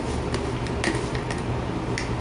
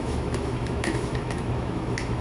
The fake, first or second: second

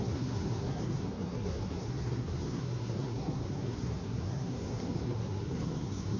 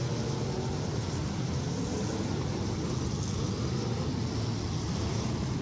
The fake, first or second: first